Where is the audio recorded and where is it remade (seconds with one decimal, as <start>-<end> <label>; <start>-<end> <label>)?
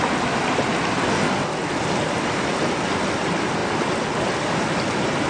0.0-5.3 recorded